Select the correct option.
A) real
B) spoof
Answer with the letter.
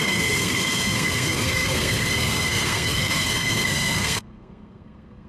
B